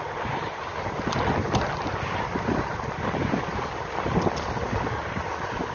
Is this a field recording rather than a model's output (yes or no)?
yes